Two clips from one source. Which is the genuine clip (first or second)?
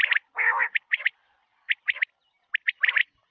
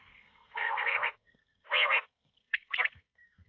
first